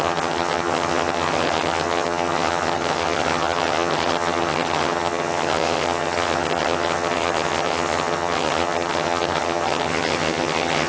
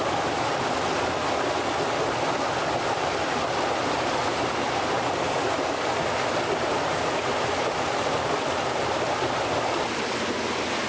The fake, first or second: first